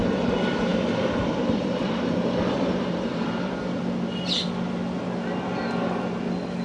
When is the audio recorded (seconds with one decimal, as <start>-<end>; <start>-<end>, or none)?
0.0-0.7; 3.8-6.6